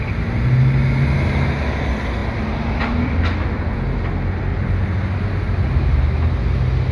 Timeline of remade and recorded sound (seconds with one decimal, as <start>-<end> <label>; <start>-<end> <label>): 0.0-2.2 recorded; 2.2-3.2 remade; 3.2-4.5 recorded; 4.5-5.2 remade; 5.2-6.9 recorded